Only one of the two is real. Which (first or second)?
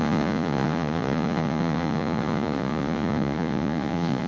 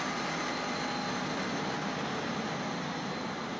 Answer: second